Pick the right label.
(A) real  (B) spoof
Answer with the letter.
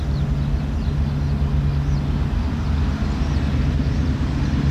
A